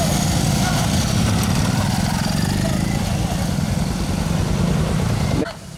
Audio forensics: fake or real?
real